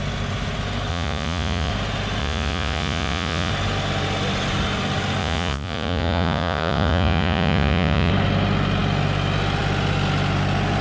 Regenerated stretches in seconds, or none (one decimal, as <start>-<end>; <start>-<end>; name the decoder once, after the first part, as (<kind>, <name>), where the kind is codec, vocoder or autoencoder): 0.9-1.7 (vocoder, Vocos); 2.2-3.5; 5.2-8.1